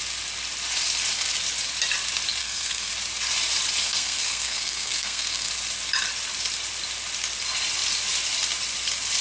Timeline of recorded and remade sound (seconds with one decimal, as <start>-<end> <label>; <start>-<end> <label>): 0.0-2.4 recorded; 2.4-2.9 remade; 2.9-3.8 recorded; 3.8-5.5 remade; 5.5-9.2 recorded

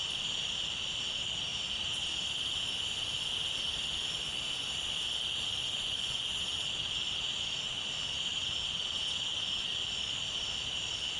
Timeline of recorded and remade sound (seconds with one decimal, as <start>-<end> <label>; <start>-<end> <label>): 0.0-5.6 recorded; 5.6-6.3 remade; 6.3-11.2 recorded

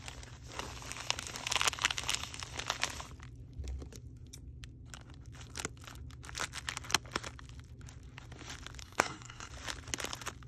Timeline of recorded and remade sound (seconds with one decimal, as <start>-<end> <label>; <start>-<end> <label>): 0.0-8.8 recorded; 8.8-9.5 remade; 9.5-10.5 recorded

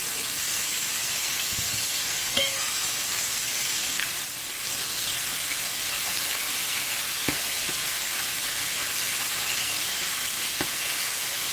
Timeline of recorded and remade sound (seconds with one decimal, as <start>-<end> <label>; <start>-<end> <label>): 0.0-4.0 remade; 4.0-4.5 recorded; 4.5-11.5 remade

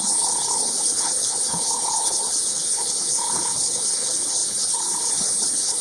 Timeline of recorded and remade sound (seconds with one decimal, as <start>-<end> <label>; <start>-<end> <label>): 0.0-5.8 remade

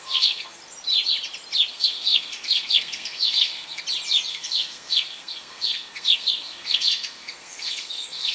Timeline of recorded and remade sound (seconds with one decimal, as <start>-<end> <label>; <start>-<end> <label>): 0.0-0.6 remade; 0.6-1.7 recorded; 1.7-3.8 remade; 3.8-4.3 recorded; 4.3-8.3 remade